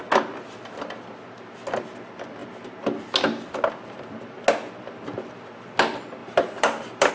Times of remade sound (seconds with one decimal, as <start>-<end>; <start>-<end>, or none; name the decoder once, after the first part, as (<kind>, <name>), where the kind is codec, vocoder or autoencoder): 6.2-7.1 (vocoder, BigVGAN v2)